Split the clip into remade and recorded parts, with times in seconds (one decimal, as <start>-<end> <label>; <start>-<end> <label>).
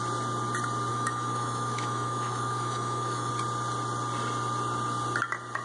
0.0-0.9 recorded; 0.9-3.3 remade; 3.3-5.6 recorded